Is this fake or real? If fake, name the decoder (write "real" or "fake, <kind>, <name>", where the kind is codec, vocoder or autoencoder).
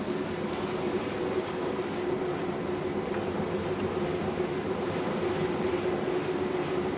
real